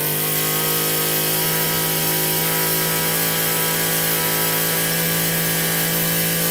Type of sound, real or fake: real